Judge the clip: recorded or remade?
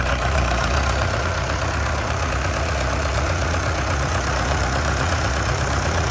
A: remade